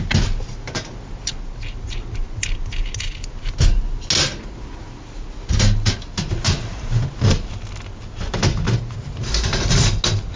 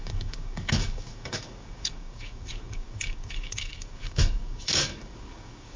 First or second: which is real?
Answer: first